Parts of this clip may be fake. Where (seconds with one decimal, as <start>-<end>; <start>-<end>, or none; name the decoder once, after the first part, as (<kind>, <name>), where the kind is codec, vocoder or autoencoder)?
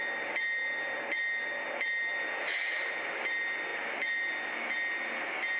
none